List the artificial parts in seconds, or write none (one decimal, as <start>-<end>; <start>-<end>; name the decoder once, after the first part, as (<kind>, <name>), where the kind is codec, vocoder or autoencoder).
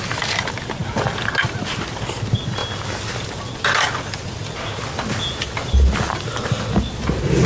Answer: 0.8-1.8 (vocoder, BigVGAN v2)